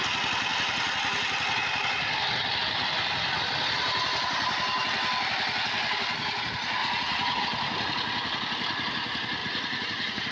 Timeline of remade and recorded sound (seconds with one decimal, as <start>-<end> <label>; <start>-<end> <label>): 0.0-6.8 recorded; 6.8-7.4 remade; 7.4-9.4 recorded; 9.4-10.3 remade